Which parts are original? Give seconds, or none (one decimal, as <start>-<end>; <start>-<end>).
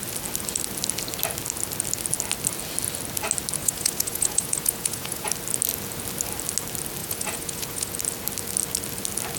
0.0-3.6; 5.3-7.0; 7.9-9.4